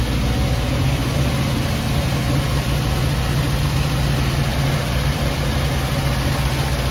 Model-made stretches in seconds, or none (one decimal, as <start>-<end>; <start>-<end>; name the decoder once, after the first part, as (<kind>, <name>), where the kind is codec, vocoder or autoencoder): 1.0-1.8 (vocoder, BigVGAN v2); 4.5-5.3